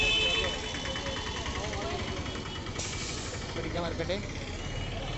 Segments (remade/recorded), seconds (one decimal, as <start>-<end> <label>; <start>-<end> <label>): 0.0-2.6 recorded; 2.6-4.0 remade; 4.0-5.2 recorded